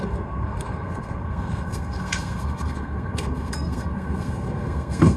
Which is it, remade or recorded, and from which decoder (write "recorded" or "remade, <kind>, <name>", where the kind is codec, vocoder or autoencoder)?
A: remade, codec, SNAC